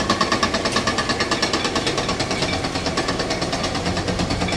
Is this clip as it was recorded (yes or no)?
yes